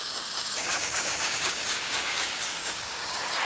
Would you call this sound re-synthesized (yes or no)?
yes